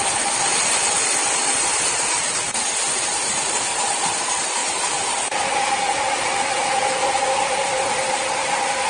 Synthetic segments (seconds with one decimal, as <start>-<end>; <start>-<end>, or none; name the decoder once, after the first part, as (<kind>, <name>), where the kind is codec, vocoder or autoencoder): none